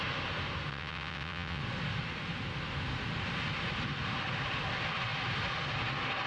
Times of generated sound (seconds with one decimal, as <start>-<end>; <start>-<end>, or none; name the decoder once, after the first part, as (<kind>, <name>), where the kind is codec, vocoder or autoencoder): 0.7-1.6 (vocoder, WaveNeXt)